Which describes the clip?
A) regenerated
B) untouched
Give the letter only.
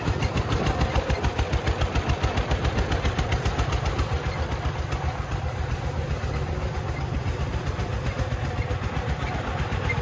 B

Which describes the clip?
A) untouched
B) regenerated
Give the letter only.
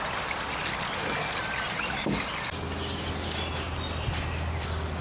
A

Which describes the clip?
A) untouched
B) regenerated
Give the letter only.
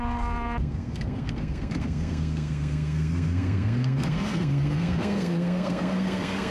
B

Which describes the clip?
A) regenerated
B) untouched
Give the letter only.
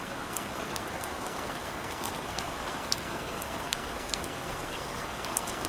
A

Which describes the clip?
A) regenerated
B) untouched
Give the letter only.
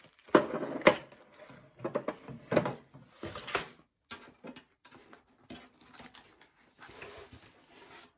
B